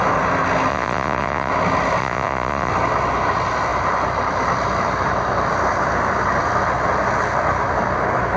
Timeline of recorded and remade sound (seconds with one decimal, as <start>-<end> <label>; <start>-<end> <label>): 0.0-0.7 recorded; 0.7-1.5 remade; 1.5-2.0 recorded; 2.0-2.7 remade; 2.7-8.4 recorded